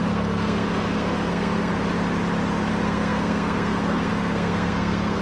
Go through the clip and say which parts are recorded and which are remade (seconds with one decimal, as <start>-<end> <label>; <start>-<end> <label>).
0.0-1.7 remade; 1.7-2.7 recorded; 2.7-5.2 remade